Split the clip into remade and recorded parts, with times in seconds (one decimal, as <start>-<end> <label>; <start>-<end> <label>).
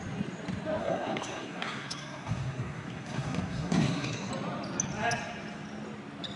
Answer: 0.0-0.8 recorded; 0.8-4.3 remade; 4.3-6.4 recorded